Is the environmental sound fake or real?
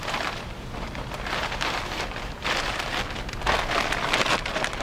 real